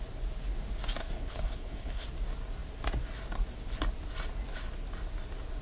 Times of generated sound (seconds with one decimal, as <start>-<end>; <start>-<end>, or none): 1.0-2.1